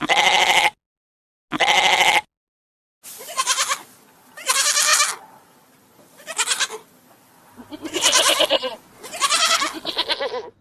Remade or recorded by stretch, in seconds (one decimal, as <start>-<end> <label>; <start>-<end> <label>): 0.0-4.9 recorded; 4.9-8.9 remade; 8.9-10.6 recorded